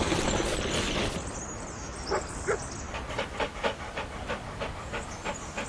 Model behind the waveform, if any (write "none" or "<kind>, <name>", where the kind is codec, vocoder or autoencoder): none